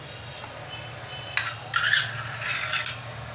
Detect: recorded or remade recorded